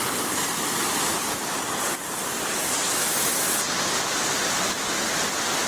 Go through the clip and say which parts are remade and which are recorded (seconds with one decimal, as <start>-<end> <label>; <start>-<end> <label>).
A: 0.0-1.1 recorded; 1.1-1.8 remade; 1.8-5.7 recorded